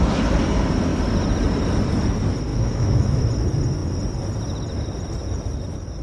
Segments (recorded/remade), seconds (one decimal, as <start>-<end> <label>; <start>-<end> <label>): 0.0-2.5 recorded; 2.5-3.2 remade; 3.2-6.0 recorded